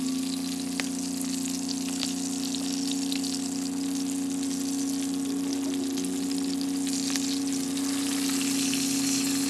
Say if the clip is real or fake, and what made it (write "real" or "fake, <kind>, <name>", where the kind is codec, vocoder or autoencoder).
real